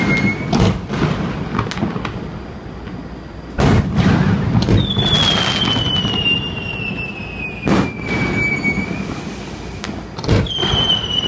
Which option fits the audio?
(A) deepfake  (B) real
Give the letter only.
B